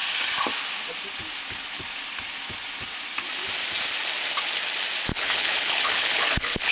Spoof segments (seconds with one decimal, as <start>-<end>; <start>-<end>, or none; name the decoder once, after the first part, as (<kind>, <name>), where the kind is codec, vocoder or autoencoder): 5.1-6.7 (codec, HILCodec)

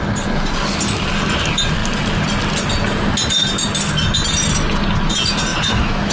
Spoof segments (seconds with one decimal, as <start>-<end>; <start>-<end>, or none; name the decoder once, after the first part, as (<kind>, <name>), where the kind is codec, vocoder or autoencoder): 5.5-6.1 (autoencoder, DAC-VAE)